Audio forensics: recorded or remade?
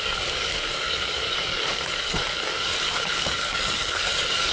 remade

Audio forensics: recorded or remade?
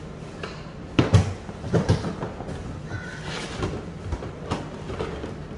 recorded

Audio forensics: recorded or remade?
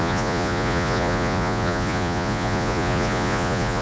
remade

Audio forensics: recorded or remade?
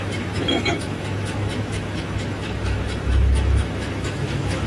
remade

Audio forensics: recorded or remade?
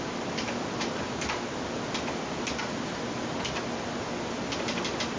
recorded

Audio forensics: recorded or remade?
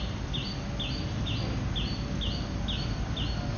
recorded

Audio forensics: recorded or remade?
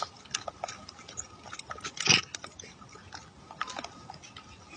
recorded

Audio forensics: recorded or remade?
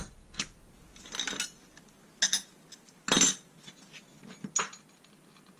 recorded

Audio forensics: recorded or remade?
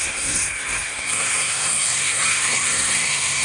remade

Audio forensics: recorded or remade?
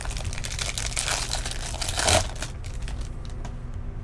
recorded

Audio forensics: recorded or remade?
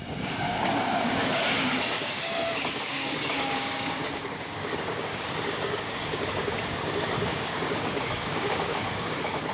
remade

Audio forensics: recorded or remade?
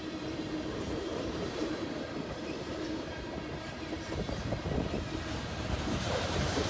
remade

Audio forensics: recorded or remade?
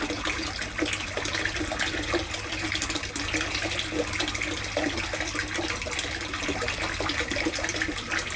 recorded